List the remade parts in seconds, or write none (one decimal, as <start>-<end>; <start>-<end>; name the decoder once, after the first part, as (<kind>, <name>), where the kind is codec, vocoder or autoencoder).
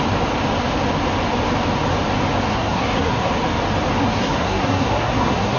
2.5-3.3 (codec, SNAC); 4.0-5.6